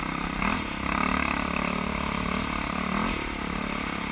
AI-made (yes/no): no